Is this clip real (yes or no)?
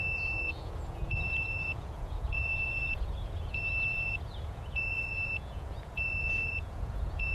no